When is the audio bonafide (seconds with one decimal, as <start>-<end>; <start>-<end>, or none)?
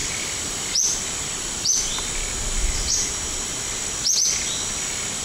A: 0.0-5.2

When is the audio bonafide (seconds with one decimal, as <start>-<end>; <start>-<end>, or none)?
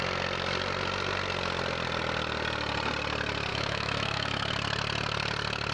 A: 0.0-3.5; 4.5-5.7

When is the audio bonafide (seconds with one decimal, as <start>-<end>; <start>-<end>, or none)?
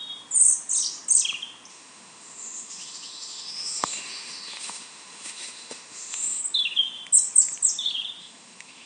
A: 0.0-1.7; 6.4-8.2